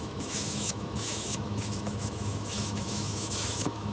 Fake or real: fake